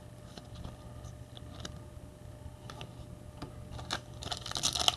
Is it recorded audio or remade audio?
recorded